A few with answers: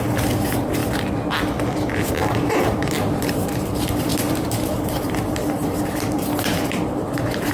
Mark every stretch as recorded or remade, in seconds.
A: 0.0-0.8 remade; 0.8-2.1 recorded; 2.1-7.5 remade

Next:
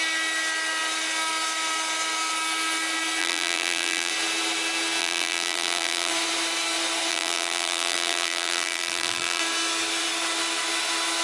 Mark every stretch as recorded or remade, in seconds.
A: 0.0-3.2 recorded; 3.2-4.1 remade; 4.1-5.0 recorded; 5.0-6.1 remade; 6.1-7.1 recorded; 7.1-9.4 remade; 9.4-11.2 recorded